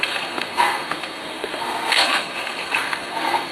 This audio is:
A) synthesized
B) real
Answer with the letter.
A